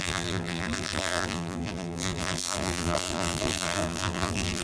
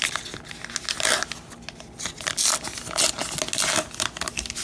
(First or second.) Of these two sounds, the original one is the second